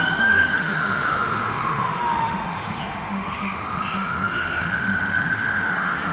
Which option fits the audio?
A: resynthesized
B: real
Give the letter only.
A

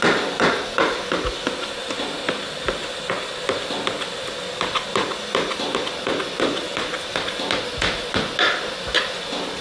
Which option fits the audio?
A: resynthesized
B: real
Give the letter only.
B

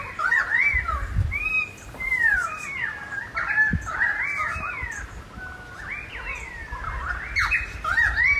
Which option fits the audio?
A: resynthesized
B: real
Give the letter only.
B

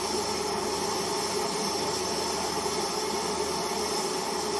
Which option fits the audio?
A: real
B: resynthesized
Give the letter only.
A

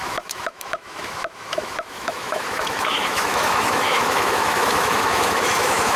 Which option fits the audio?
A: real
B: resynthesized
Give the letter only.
B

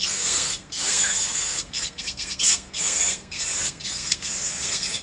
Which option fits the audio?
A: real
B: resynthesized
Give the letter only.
B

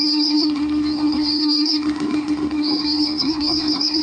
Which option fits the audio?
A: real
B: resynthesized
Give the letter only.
B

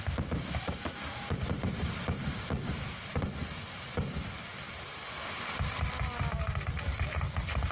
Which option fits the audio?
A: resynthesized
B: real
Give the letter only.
B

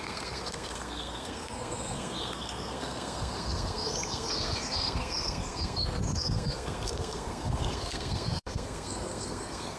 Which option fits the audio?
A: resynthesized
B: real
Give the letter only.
A